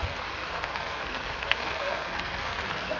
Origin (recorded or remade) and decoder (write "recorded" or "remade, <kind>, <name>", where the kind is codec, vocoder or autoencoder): remade, codec, SNAC